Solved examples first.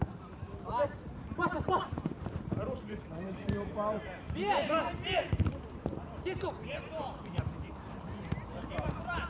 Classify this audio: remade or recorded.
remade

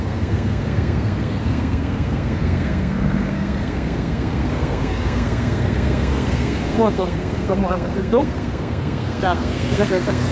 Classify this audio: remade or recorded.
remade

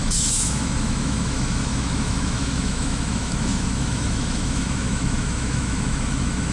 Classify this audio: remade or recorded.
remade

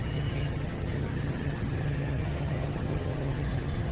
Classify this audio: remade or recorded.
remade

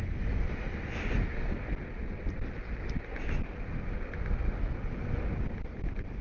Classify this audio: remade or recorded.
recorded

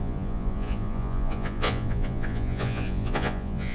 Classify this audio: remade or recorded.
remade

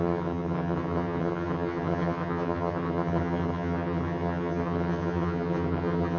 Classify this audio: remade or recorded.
remade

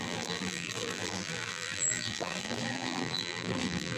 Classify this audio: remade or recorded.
remade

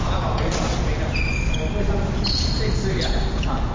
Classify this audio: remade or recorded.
recorded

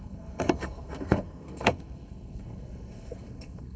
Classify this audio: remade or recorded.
remade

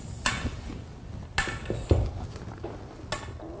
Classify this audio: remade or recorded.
recorded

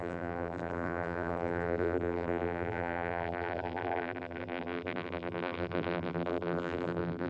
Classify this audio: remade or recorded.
remade